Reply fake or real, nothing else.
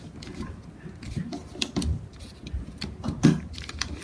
real